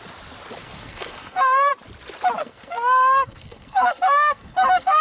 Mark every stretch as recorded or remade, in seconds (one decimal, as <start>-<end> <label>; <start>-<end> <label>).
0.0-0.6 recorded; 0.6-1.7 remade; 1.7-2.4 recorded; 2.4-5.0 remade